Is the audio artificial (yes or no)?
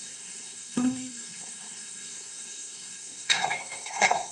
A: yes